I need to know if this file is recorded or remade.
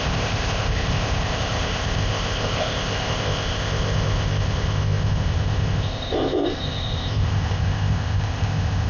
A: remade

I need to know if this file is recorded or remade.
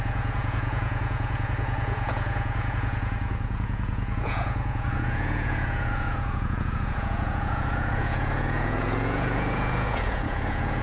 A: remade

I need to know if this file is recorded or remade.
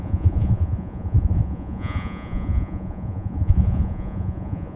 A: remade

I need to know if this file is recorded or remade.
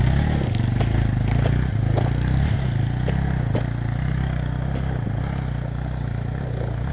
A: recorded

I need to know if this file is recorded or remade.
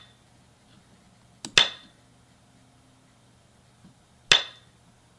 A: recorded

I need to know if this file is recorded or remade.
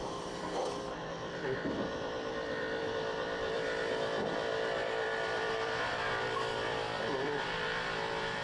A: remade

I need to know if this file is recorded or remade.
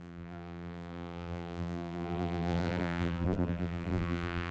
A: remade